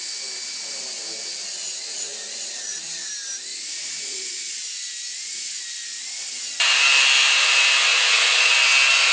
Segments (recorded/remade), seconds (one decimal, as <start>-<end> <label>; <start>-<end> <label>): 0.0-1.6 recorded; 1.6-3.1 remade; 3.1-3.5 recorded; 3.5-4.5 remade; 4.5-7.9 recorded; 7.9-8.5 remade; 8.5-9.1 recorded